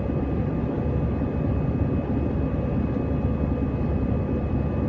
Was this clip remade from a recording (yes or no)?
no